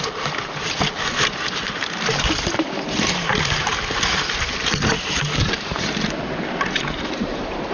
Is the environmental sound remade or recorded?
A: remade